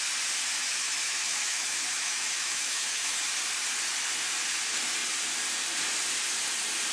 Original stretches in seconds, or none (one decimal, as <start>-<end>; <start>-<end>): 0.0-0.6; 3.2-6.9